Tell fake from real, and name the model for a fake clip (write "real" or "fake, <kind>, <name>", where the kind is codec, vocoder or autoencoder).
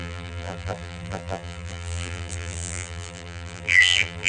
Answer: fake, vocoder, BigVGAN v2